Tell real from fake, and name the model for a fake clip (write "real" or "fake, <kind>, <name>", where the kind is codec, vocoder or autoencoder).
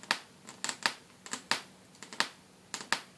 real